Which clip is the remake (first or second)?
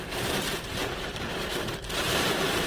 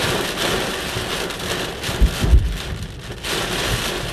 first